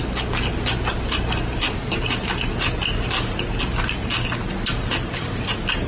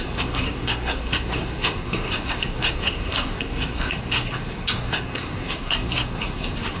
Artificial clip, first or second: second